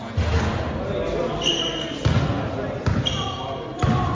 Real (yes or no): yes